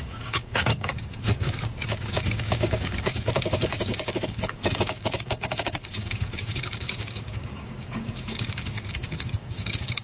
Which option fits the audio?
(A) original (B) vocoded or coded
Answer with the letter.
B